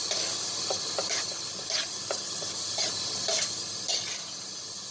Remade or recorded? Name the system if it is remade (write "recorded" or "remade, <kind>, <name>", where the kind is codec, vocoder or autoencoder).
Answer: recorded